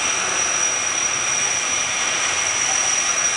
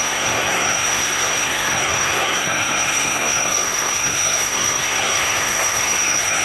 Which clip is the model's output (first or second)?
second